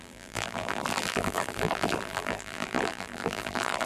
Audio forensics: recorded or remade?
remade